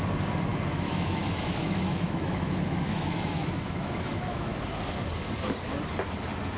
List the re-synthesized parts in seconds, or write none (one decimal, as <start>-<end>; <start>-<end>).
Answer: 0.5-4.5